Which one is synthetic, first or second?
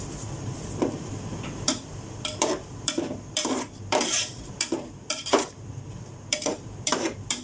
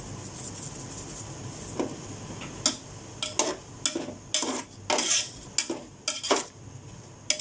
first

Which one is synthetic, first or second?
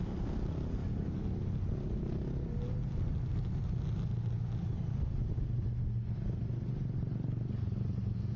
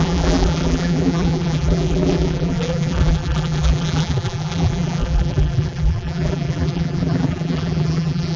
second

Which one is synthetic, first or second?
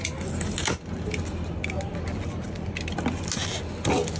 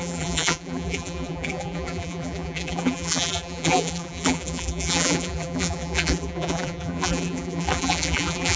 second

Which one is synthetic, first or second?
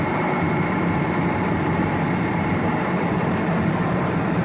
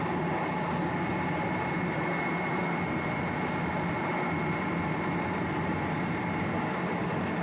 first